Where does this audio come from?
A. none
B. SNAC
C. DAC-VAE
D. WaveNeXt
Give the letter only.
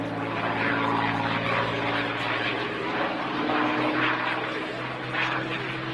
A